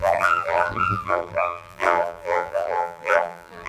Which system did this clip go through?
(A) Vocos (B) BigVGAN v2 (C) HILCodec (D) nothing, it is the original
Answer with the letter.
B